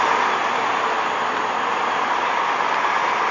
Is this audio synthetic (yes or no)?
no